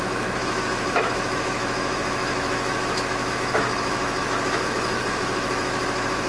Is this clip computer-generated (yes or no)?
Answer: yes